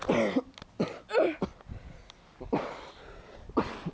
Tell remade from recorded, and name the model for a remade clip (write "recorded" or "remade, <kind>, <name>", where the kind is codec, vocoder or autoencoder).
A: recorded